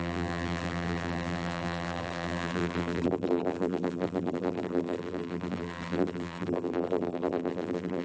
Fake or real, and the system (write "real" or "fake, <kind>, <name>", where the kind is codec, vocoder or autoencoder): fake, vocoder, BigVGAN v2